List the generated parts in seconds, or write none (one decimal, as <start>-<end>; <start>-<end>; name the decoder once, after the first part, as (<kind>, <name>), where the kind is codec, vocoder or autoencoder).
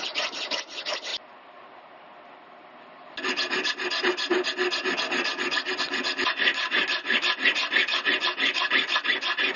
none